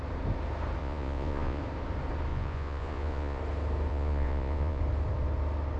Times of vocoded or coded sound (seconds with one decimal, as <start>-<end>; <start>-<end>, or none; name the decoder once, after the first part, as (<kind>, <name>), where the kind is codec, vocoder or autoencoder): 0.8-1.6 (vocoder, Vocos); 2.3-3.4; 3.9-4.8